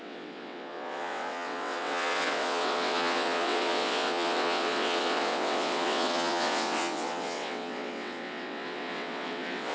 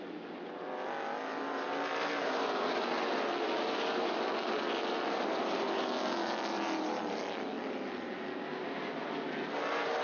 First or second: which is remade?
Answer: first